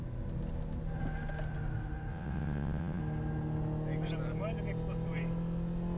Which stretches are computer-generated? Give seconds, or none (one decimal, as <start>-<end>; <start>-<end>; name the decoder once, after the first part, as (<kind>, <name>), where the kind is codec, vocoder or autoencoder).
2.1-3.0 (vocoder, WaveNeXt)